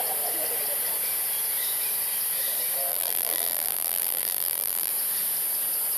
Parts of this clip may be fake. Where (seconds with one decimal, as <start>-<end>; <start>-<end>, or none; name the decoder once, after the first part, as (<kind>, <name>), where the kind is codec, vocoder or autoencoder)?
2.9-4.9 (vocoder, BigVGAN v2)